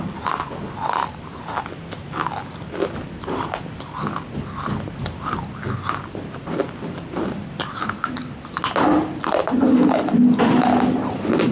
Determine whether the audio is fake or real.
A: real